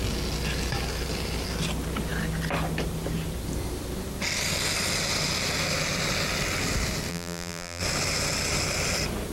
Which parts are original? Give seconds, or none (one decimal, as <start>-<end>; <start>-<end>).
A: 0.0-7.1; 7.8-9.3